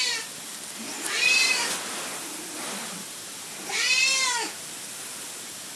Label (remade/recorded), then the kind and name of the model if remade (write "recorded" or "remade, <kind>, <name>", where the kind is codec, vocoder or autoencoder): recorded